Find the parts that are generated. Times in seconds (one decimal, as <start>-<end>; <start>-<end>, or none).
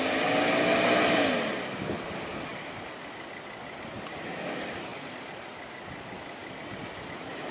2.5-3.3; 4.9-5.7; 6.4-7.5